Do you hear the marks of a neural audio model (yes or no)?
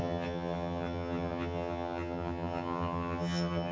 yes